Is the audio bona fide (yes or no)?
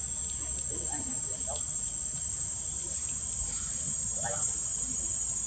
yes